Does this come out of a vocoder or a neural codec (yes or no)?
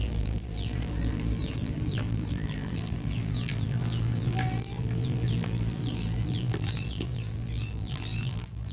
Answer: yes